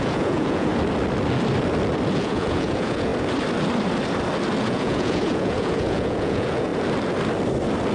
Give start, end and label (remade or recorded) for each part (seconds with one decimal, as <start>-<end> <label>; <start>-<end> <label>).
0.0-0.7 remade; 0.7-2.2 recorded; 2.2-3.1 remade; 3.1-4.6 recorded; 4.6-6.7 remade; 6.7-7.9 recorded